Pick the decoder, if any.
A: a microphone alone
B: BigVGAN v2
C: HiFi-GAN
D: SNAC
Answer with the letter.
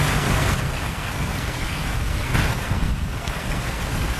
D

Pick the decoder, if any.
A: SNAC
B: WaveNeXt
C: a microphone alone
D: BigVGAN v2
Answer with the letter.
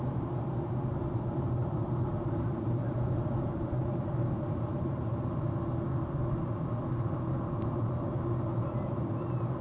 C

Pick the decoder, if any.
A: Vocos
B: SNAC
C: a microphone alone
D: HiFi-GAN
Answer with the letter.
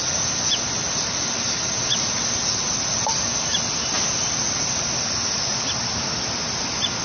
C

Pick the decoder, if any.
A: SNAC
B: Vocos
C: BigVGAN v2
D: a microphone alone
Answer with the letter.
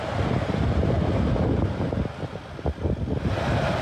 D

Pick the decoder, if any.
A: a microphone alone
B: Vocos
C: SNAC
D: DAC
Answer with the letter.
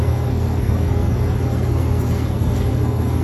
C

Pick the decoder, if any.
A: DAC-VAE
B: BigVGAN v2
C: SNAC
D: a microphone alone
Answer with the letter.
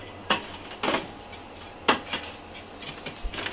D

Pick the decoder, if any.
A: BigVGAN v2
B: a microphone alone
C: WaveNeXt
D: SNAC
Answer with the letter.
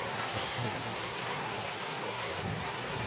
D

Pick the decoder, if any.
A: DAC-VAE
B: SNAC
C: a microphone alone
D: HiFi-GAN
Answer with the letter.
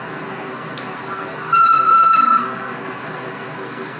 B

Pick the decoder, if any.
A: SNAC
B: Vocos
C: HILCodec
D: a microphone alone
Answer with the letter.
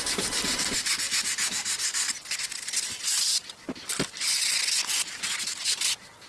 D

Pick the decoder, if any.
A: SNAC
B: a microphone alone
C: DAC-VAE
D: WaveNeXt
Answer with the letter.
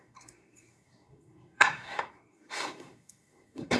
A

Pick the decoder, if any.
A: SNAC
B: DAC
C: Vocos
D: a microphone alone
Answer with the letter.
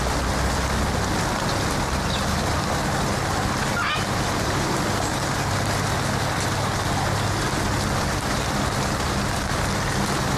D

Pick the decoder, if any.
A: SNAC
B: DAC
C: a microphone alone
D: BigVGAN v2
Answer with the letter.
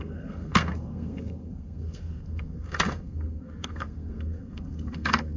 A